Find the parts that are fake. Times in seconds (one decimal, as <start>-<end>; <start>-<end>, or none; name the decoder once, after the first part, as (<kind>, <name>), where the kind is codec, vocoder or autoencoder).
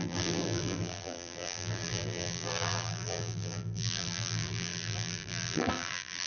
0.0-6.3 (vocoder, BigVGAN v2)